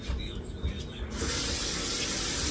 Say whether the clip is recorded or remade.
recorded